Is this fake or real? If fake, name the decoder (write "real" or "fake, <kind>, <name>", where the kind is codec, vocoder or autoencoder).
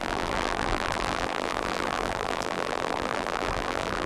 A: fake, vocoder, BigVGAN v2